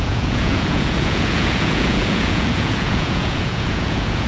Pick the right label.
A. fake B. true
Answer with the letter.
A